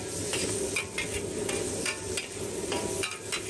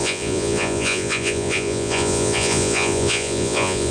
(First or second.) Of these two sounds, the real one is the first